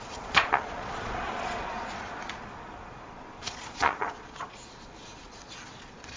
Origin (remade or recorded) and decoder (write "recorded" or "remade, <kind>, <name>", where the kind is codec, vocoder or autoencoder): remade, vocoder, Vocos